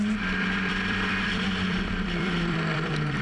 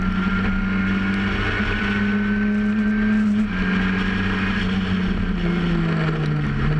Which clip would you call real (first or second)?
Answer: second